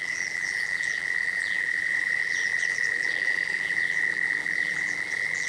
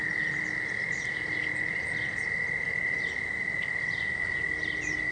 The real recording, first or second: second